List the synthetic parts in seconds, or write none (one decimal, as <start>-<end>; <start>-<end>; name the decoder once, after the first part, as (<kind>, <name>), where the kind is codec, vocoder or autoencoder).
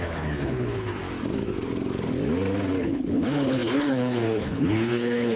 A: 0.0-1.0 (codec, HILCodec); 2.8-5.4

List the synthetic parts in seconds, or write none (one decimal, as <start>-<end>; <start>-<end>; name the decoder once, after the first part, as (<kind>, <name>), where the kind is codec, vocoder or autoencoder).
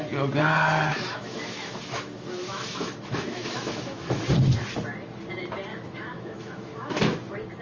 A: 0.9-4.2 (autoencoder, DAC-VAE); 5.7-7.0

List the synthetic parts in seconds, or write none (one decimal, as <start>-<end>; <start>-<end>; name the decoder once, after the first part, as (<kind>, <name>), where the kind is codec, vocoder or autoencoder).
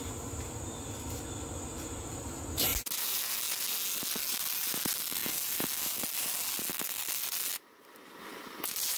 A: none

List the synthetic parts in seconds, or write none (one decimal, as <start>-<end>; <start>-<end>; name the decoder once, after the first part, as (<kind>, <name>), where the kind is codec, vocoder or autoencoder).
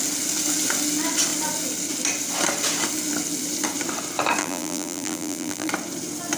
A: 4.4-5.7 (vocoder, BigVGAN v2)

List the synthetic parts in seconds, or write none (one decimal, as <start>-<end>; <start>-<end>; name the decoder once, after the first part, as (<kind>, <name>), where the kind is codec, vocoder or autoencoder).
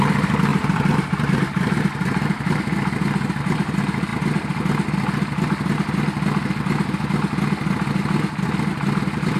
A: 0.5-2.6 (vocoder, BigVGAN v2)